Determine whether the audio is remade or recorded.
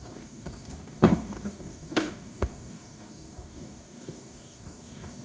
remade